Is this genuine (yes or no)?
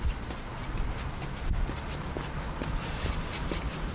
yes